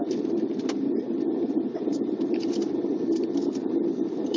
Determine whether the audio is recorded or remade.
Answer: remade